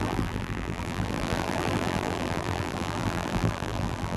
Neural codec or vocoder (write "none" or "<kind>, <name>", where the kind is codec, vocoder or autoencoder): vocoder, BigVGAN v2